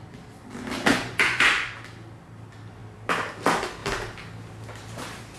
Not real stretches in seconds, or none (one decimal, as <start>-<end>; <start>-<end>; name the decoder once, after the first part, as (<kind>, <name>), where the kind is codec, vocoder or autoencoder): 0.9-1.7 (vocoder, Vocos)